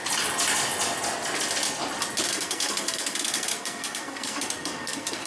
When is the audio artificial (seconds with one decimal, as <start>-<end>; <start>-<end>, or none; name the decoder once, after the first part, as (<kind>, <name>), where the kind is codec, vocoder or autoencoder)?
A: 2.3-5.3 (codec, SNAC)